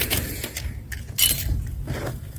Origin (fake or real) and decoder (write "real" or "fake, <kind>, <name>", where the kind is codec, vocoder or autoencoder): real